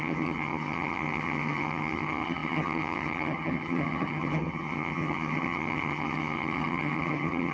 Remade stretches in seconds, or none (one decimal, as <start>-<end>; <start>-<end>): 0.0-7.5